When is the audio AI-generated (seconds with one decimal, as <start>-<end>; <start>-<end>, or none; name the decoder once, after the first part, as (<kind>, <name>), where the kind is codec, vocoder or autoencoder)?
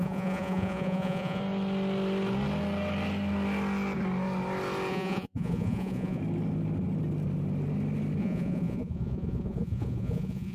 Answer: 0.0-1.4 (vocoder, Vocos); 4.9-6.2; 8.2-10.5